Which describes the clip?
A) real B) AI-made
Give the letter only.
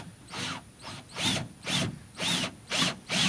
A